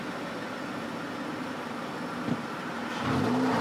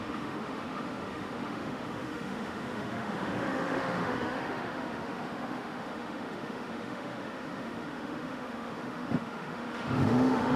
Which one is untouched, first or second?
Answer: first